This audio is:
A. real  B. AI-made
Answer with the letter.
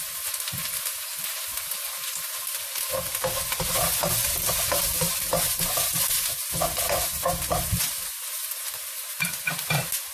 A